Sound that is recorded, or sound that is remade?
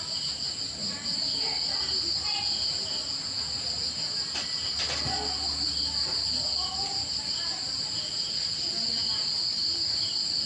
recorded